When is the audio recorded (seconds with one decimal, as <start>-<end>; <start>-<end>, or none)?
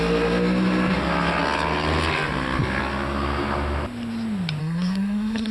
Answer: 0.0-4.6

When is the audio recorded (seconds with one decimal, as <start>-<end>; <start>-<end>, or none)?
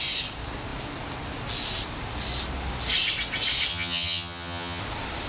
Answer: 0.0-3.7; 4.8-5.3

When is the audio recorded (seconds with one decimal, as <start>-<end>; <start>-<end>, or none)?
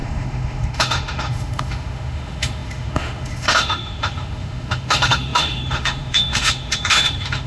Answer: none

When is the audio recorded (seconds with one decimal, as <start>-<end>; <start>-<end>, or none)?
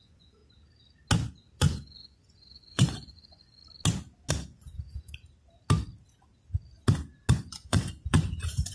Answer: 0.4-1.6; 3.6-4.3; 5.1-7.3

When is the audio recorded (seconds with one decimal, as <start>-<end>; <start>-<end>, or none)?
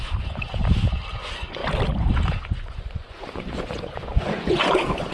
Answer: 0.6-1.2; 1.6-2.3